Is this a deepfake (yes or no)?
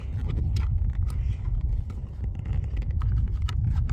no